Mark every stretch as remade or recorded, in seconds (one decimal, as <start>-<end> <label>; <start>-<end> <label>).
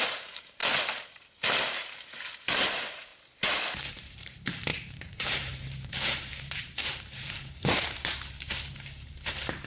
0.0-0.6 remade; 0.6-1.7 recorded; 1.7-3.1 remade; 3.1-3.9 recorded; 3.9-9.7 remade